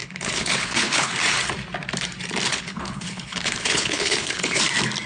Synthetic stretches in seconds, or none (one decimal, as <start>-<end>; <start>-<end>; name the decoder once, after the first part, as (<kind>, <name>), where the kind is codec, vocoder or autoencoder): 0.0-1.1 (codec, HILCodec); 2.5-4.6